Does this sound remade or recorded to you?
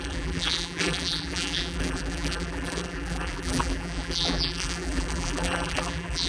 remade